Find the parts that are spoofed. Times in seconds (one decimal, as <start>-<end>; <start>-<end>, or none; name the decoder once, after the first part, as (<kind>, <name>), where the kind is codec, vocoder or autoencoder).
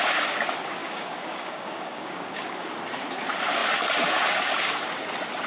0.8-2.7 (codec, DAC)